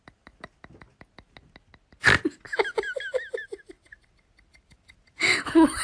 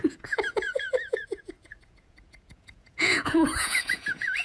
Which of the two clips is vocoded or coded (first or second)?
second